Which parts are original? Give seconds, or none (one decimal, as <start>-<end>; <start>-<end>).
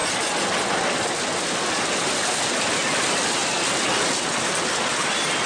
0.0-5.5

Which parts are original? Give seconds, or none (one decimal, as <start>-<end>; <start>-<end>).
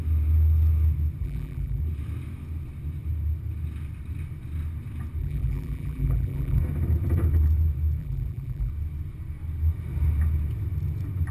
0.0-1.2; 1.8-5.2; 6.6-8.0; 8.7-11.3